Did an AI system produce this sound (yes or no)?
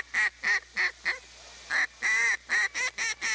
no